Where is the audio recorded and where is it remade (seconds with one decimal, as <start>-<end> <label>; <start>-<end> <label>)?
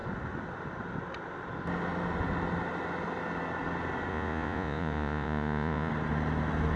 0.0-4.1 recorded; 4.1-5.9 remade; 5.9-6.8 recorded